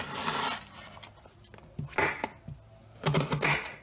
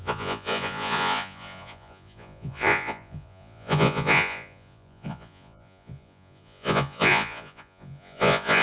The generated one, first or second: second